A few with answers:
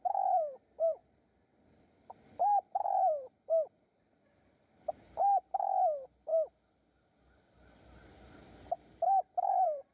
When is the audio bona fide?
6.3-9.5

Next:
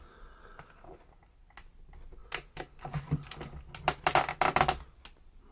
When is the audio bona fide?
0.0-5.5